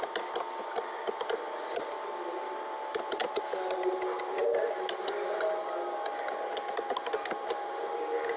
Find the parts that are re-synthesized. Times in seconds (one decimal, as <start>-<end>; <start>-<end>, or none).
none